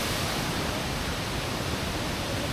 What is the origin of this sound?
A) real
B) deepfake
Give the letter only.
A